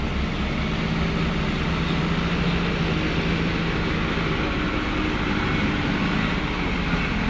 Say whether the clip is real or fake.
real